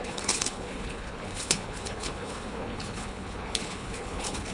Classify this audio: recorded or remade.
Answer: remade